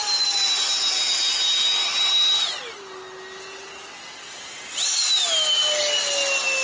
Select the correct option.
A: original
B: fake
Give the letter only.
A